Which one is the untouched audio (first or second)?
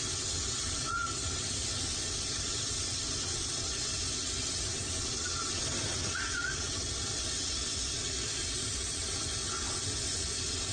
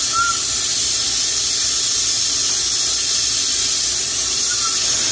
second